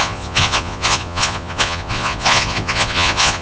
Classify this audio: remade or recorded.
remade